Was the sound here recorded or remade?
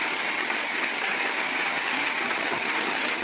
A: remade